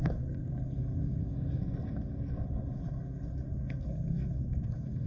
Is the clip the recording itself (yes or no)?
no